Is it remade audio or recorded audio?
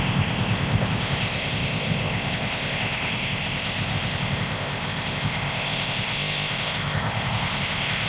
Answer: remade